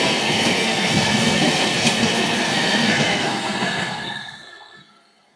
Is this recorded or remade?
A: remade